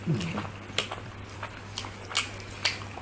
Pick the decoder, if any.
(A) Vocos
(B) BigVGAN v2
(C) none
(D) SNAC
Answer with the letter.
C